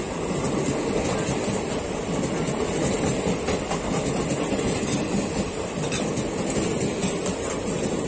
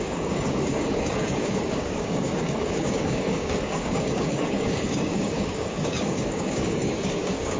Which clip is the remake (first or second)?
second